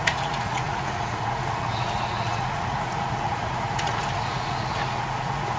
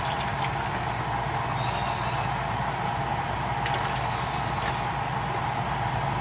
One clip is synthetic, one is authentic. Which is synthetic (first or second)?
first